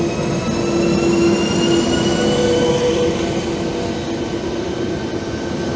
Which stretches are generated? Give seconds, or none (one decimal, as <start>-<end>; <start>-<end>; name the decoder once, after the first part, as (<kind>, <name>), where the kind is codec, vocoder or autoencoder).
none